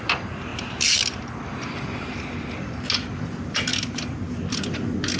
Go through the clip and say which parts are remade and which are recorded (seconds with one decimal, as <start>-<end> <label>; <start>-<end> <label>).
0.0-3.7 recorded; 3.7-4.3 remade; 4.3-5.2 recorded